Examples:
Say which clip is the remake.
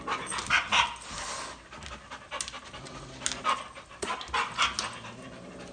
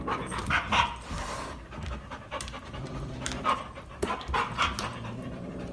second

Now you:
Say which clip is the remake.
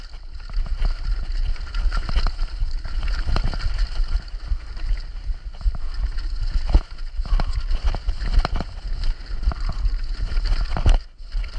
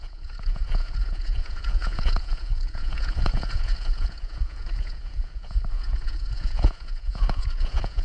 second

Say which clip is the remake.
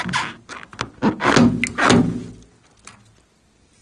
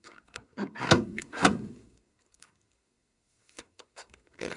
second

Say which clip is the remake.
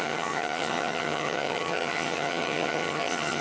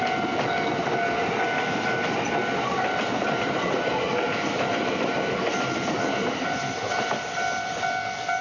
first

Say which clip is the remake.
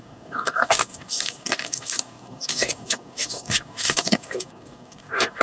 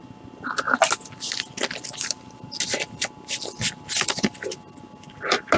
first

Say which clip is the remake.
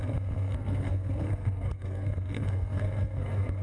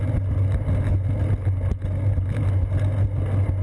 first